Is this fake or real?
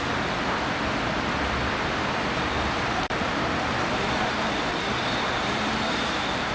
fake